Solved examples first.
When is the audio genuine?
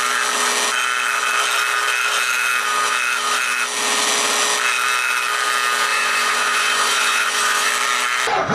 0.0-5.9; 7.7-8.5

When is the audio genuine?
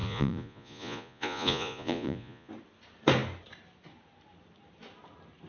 2.5-5.5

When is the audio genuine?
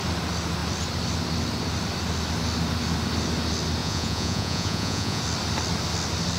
0.0-3.8; 5.2-6.4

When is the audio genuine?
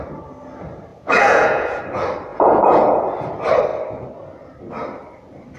0.0-0.9; 1.8-2.3; 3.0-5.6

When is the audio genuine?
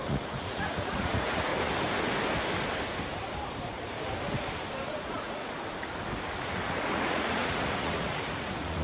1.5-4.9; 5.4-6.4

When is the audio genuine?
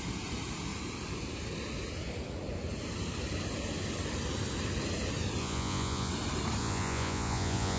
0.0-5.4; 6.1-6.6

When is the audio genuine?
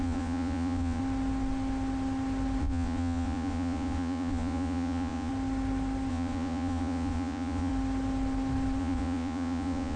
1.0-2.6; 5.3-6.1; 7.7-8.8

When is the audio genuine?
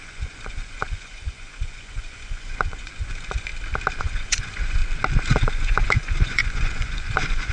3.5-4.0; 4.8-5.3